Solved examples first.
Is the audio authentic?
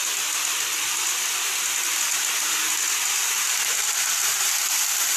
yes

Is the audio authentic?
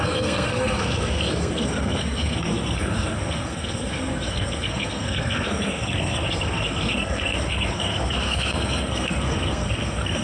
no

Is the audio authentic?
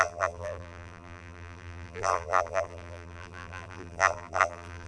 no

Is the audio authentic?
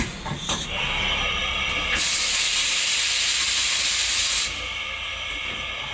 no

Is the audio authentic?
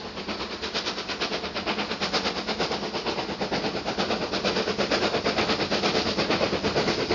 yes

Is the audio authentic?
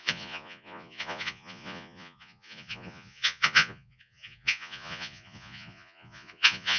no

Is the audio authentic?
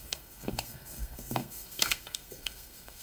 no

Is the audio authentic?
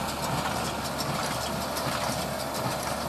yes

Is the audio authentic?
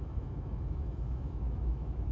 no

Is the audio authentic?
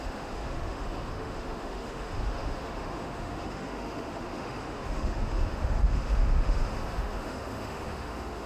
no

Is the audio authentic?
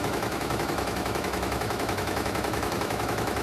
no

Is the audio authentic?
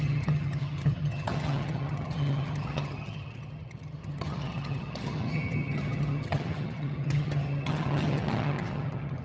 no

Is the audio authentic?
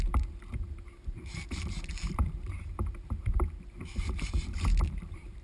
no